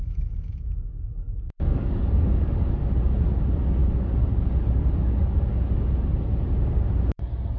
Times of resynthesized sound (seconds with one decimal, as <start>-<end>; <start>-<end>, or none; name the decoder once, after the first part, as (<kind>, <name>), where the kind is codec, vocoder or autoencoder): 0.0-2.7 (codec, DAC)